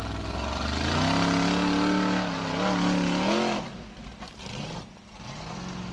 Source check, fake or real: real